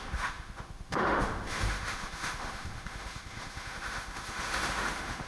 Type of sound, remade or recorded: remade